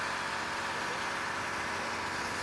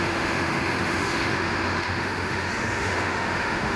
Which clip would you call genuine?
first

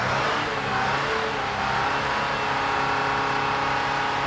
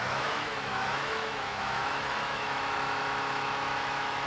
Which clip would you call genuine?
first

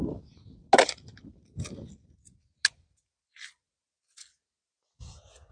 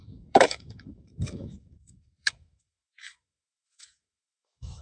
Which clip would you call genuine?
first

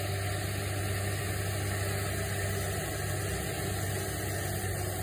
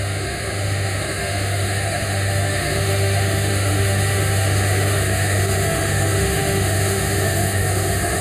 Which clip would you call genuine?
first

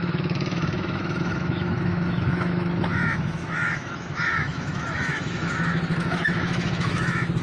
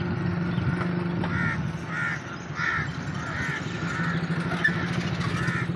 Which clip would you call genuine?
second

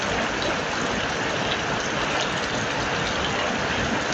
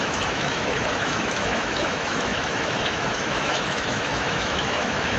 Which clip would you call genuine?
first